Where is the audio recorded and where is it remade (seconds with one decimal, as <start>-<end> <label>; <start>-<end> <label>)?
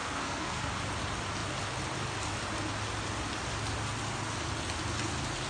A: 0.0-0.7 remade; 0.7-5.5 recorded